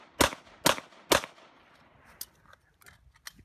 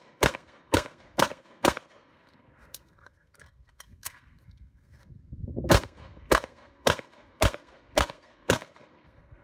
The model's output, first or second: second